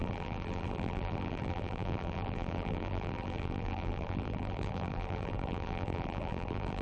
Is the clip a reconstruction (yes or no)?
yes